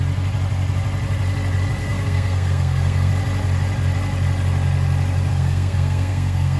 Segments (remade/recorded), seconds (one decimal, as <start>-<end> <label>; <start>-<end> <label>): 0.0-1.8 recorded; 1.8-3.1 remade; 3.1-5.3 recorded; 5.3-6.6 remade